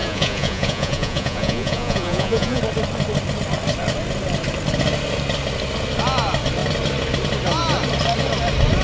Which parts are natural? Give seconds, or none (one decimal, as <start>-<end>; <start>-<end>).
2.6-8.8